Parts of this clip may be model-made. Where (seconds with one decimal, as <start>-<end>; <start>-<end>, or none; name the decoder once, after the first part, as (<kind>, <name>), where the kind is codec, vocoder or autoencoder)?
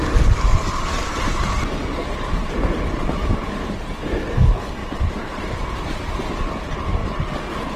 0.5-1.3 (vocoder, BigVGAN v2); 3.2-4.0; 4.8-6.3